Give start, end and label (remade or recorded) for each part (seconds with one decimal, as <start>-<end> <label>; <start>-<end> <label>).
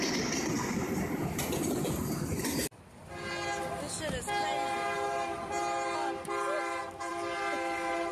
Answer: 0.0-8.1 recorded